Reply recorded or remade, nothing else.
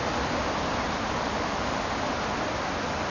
recorded